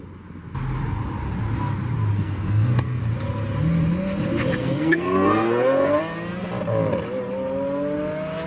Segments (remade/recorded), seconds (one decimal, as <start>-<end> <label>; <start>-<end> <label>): 0.0-2.1 recorded; 2.1-3.0 remade; 3.0-4.6 recorded; 4.6-6.0 remade; 6.0-8.5 recorded